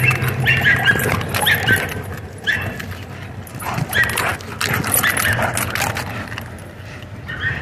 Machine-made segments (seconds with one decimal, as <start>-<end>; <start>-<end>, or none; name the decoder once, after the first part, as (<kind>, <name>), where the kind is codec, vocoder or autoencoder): none